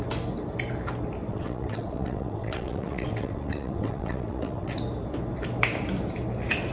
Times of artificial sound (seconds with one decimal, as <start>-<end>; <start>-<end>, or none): 1.3-4.8